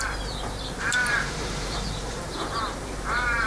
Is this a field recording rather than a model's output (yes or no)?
no